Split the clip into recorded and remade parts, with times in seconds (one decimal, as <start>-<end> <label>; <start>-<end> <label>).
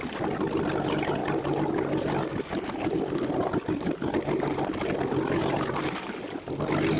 0.0-7.0 recorded